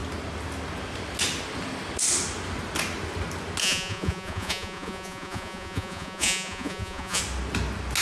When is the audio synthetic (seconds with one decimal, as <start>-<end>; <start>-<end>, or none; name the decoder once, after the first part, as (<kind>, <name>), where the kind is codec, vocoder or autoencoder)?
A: 3.6-7.2 (vocoder, Vocos)